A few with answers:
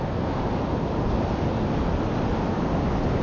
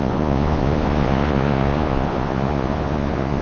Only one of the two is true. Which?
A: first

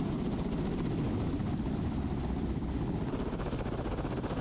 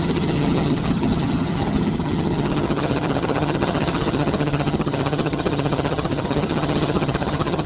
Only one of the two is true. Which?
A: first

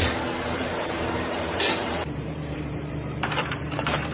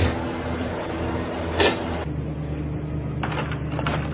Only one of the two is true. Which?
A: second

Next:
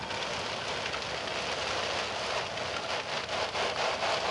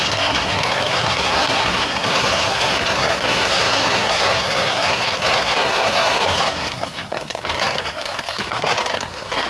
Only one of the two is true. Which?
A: first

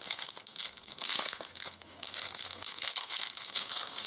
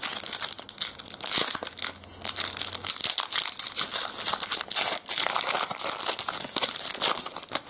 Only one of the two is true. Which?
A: second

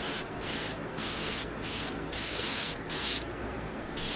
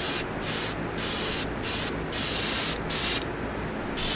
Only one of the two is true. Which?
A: second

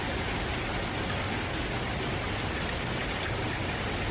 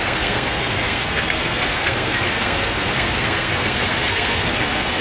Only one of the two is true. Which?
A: first